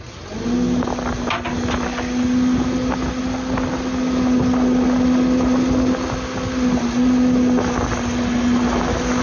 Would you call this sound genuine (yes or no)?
yes